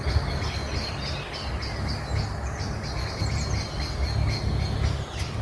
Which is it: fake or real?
real